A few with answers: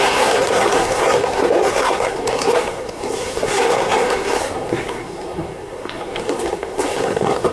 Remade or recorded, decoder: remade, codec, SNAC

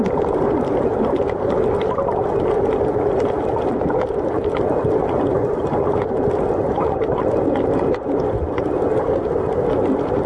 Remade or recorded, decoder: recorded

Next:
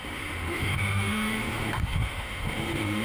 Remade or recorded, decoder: remade, autoencoder, DAC-VAE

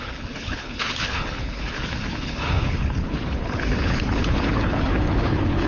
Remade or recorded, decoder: remade, codec, HILCodec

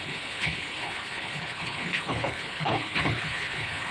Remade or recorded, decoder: remade, codec, HILCodec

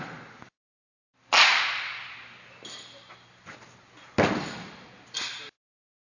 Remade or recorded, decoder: recorded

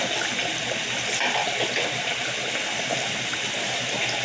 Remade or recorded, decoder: recorded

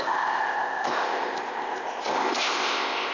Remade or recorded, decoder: remade, codec, ZipCodec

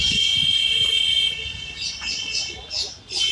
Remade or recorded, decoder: recorded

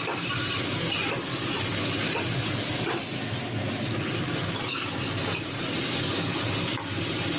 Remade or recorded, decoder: recorded